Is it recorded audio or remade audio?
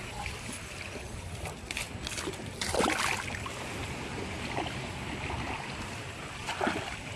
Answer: recorded